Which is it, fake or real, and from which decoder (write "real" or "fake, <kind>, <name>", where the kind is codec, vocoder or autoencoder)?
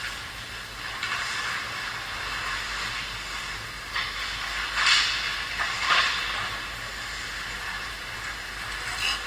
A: real